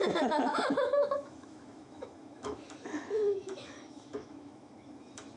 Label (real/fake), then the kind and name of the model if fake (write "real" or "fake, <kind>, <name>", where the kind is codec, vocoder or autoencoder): fake, autoencoder, DAC-VAE